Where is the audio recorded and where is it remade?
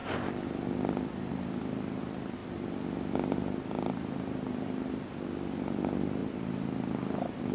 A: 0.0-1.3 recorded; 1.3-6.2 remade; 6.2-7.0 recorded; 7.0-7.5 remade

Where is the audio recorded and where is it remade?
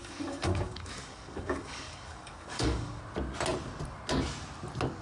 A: 0.0-3.0 remade; 3.0-5.0 recorded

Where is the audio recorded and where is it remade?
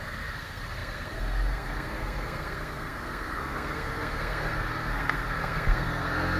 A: 0.0-6.4 remade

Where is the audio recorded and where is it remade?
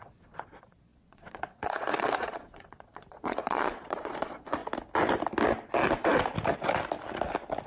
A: 0.0-4.6 remade; 4.6-7.7 recorded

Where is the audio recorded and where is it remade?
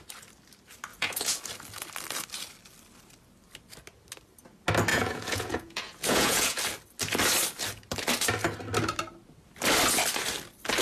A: 0.0-0.9 recorded; 0.9-1.4 remade; 1.4-4.9 recorded; 4.9-6.6 remade; 6.6-10.8 recorded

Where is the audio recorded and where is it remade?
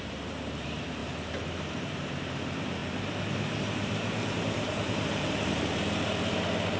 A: 0.0-1.0 remade; 1.0-1.7 recorded; 1.7-6.8 remade